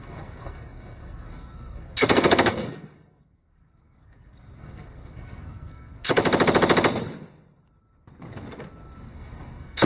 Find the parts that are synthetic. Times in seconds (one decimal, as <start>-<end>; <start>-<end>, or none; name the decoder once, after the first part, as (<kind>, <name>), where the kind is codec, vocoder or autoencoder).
0.0-6.2 (codec, SNAC); 9.1-9.9

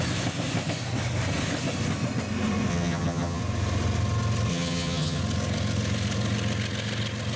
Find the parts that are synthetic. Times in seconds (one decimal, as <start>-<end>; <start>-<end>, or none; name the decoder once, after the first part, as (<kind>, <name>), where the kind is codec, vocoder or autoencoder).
2.7-3.4 (vocoder, HiFi-GAN); 4.5-5.2

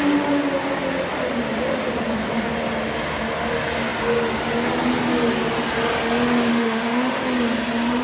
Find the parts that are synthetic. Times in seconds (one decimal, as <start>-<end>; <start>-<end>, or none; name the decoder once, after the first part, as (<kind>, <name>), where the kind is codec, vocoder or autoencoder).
6.5-7.2 (autoencoder, DAC-VAE)

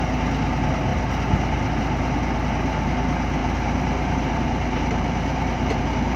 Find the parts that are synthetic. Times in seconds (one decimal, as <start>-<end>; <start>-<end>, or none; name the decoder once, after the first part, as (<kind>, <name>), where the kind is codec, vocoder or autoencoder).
3.4-5.8 (vocoder, BigVGAN v2)